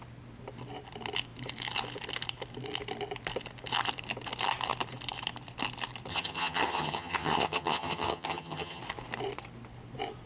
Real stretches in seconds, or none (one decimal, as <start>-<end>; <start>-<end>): 0.0-6.1; 8.8-10.3